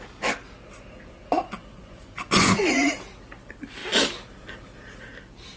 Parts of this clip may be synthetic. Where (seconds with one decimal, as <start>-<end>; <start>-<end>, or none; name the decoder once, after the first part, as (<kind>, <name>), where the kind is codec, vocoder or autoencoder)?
1.6-2.9 (vocoder, Vocos)